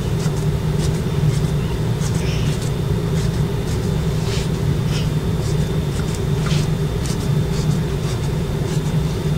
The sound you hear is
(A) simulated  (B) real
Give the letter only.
B